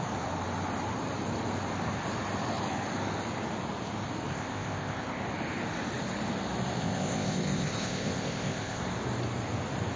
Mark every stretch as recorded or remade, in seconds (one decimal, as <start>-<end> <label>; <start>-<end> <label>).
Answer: 0.0-4.3 recorded; 4.3-5.2 remade; 5.2-6.8 recorded; 6.8-8.8 remade; 8.8-10.0 recorded